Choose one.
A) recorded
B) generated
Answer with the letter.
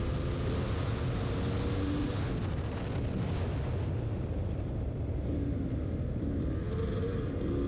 A